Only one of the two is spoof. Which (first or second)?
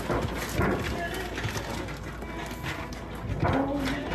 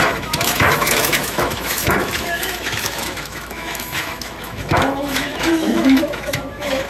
second